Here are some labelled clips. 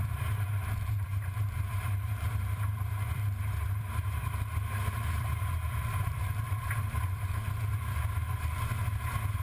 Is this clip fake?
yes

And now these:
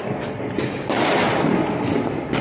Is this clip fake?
no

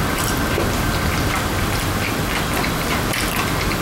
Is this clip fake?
no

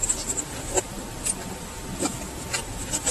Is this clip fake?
no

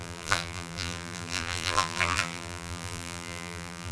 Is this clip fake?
yes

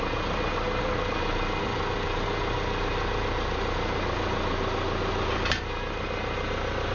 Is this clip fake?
no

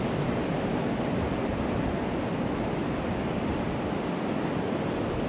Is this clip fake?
no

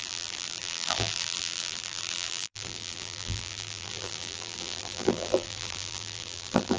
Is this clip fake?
yes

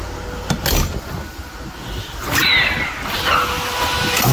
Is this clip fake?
no